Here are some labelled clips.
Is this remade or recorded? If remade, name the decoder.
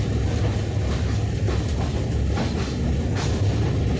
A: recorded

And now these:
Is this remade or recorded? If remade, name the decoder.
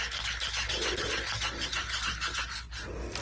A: recorded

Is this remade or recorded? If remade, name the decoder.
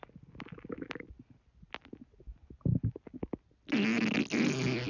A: recorded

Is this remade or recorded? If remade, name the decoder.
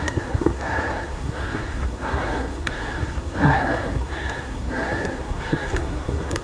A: remade, codec, SNAC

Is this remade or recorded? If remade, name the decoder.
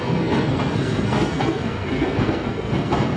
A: remade, codec, SNAC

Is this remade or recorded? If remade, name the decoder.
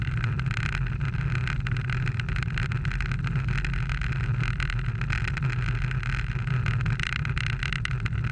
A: recorded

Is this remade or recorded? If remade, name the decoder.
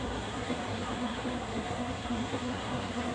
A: remade, codec, SNAC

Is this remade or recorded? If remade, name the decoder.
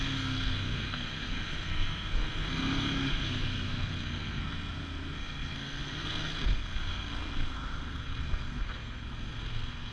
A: remade, codec, SNAC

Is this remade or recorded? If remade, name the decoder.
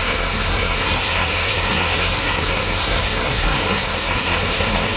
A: remade, codec, SNAC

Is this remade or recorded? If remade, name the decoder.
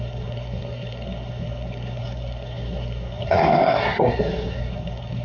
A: remade, codec, SNAC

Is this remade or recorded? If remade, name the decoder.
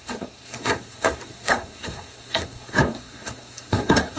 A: remade, codec, SNAC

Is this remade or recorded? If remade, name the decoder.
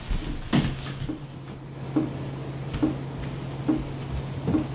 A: recorded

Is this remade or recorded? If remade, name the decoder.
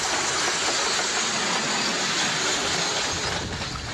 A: recorded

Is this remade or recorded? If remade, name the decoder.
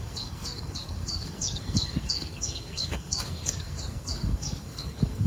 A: remade, codec, SNAC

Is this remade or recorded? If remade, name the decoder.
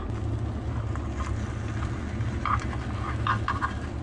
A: recorded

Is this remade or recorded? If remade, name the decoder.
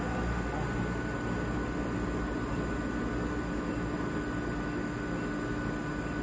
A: recorded